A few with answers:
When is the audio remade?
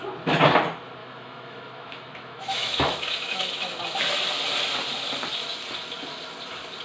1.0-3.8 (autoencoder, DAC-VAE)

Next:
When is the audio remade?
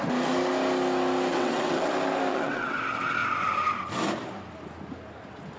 1.3-1.9 (vocoder, WaveNeXt); 2.3-2.8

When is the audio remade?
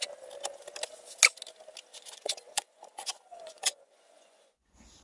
1.9-5.0 (vocoder, Vocos)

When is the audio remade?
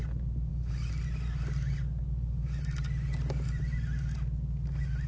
none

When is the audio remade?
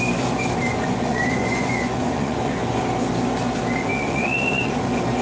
0.7-2.8 (vocoder, Vocos); 3.9-4.8